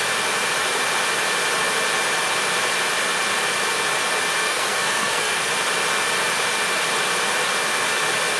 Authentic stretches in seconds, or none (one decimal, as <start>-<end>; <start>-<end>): 0.0-4.4; 5.5-8.4